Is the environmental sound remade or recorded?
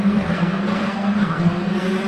remade